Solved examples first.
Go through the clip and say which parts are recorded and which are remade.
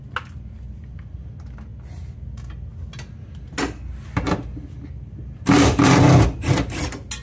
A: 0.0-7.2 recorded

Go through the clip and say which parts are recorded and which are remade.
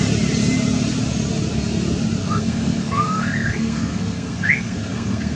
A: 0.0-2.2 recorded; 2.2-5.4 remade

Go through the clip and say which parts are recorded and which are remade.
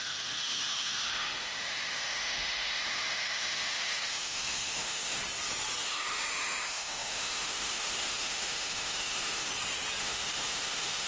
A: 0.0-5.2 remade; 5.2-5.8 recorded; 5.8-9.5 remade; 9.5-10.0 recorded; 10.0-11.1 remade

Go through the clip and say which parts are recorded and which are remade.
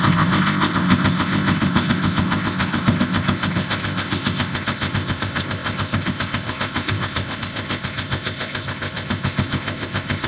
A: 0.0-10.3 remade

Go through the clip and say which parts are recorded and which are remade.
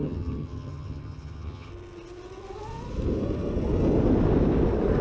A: 0.0-1.7 remade; 1.7-5.0 recorded